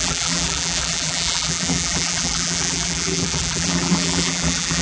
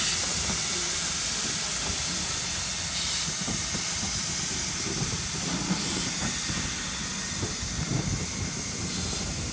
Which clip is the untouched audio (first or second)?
second